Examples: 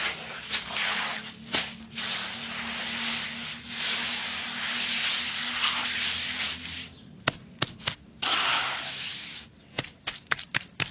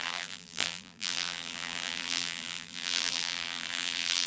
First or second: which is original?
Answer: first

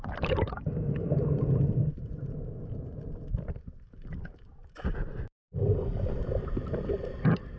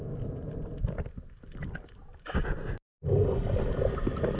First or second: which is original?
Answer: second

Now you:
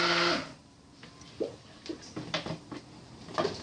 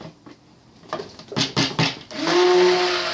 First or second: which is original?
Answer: second